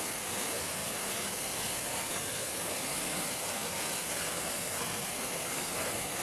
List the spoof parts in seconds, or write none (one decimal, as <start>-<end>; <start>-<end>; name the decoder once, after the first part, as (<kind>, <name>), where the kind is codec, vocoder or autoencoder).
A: 0.0-6.2 (codec, SNAC)